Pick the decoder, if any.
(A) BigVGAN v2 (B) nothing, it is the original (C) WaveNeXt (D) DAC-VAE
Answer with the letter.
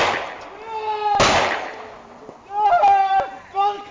B